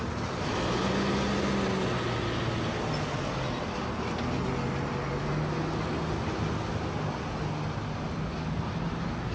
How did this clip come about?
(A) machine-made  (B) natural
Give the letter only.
B